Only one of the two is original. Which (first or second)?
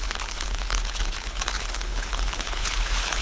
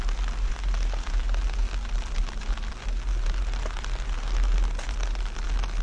second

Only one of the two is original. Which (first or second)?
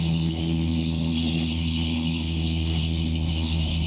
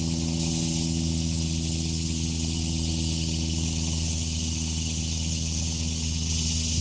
second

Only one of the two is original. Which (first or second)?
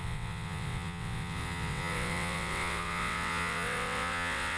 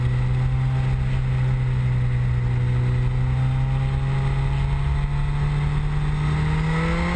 second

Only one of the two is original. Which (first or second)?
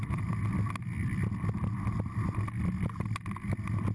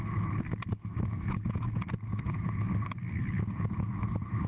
first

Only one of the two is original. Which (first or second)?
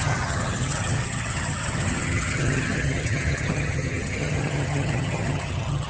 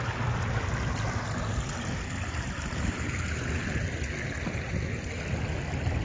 second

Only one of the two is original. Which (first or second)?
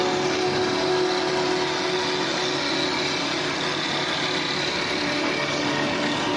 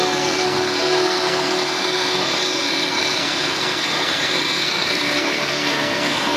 first